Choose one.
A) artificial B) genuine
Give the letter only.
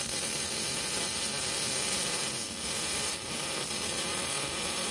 B